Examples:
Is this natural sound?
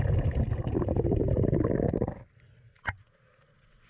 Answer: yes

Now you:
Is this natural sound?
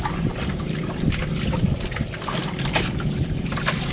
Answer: yes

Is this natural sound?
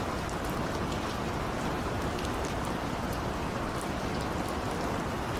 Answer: yes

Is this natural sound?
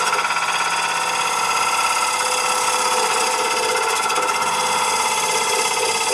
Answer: yes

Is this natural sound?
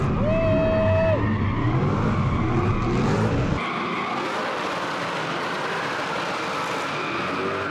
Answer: yes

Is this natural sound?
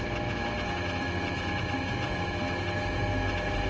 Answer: yes